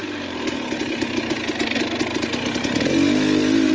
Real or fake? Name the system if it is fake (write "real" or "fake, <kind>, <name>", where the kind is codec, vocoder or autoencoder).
real